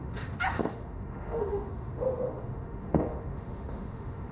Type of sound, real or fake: fake